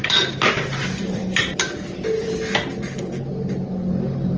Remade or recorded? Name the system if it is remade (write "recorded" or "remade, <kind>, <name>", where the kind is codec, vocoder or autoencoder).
recorded